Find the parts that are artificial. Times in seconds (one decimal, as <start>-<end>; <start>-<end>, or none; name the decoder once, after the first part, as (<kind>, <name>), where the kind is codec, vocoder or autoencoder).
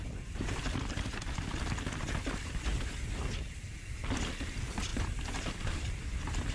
0.0-2.7 (vocoder, BigVGAN v2); 3.9-6.5